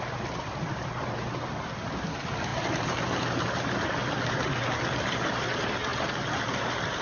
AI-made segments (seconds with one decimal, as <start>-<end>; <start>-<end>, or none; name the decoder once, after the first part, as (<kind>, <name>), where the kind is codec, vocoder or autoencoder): 2.5-3.2 (vocoder, BigVGAN v2); 5.9-6.6